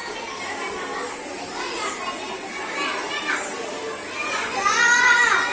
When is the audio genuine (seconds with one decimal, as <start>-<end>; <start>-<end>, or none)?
0.0-4.2